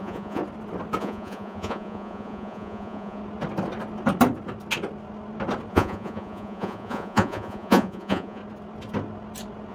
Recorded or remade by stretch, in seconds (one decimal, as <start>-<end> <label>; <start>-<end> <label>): 0.0-0.4 remade; 0.4-1.0 recorded; 1.0-3.2 remade; 3.2-5.7 recorded; 5.7-8.4 remade; 8.4-9.7 recorded